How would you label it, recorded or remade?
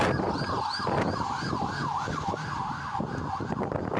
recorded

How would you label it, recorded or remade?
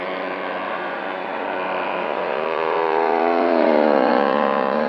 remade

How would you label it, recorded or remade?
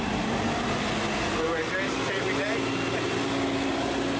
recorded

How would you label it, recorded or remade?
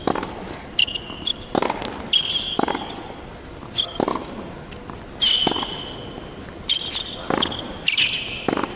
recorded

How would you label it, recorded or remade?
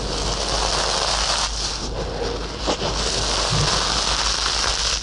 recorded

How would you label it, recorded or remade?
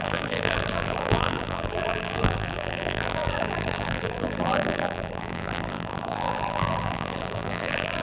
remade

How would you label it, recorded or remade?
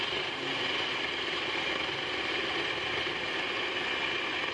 recorded